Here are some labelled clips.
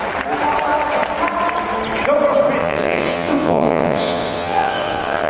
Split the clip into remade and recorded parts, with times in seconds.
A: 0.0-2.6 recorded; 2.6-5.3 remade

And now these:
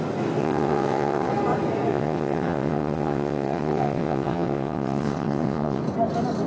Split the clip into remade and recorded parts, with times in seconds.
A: 0.0-0.4 recorded; 0.4-1.3 remade; 1.3-1.9 recorded; 1.9-5.8 remade; 5.8-6.5 recorded

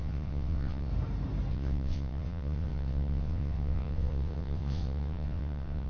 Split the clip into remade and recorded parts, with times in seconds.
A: 0.0-0.9 remade; 0.9-1.5 recorded; 1.5-5.9 remade

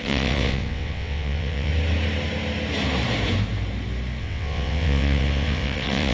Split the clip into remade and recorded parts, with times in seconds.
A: 0.0-1.7 remade; 1.7-4.2 recorded; 4.2-6.1 remade

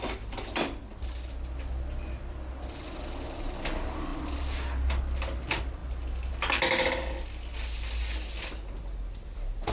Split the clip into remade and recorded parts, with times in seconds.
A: 0.0-9.7 recorded

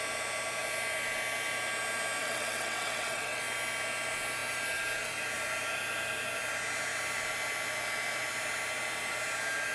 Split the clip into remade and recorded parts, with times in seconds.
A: 0.0-2.2 recorded; 2.2-3.4 remade; 3.4-9.7 recorded

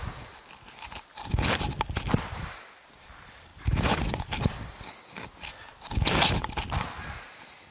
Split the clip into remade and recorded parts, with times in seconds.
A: 0.0-7.7 recorded

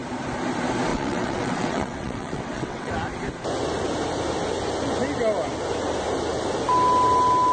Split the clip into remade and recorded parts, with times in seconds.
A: 0.0-0.9 recorded; 0.9-2.9 remade; 2.9-7.5 recorded